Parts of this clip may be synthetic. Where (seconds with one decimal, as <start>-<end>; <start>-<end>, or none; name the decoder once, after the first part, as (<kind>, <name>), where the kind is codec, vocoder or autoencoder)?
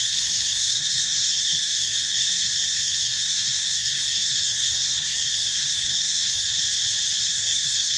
0.0-6.6 (codec, SNAC); 7.2-8.0